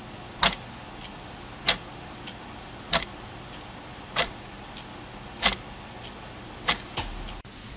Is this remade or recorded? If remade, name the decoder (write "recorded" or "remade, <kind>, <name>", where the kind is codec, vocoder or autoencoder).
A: recorded